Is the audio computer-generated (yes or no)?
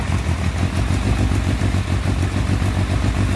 no